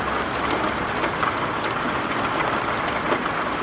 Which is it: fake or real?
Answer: real